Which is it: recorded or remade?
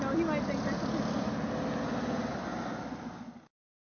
recorded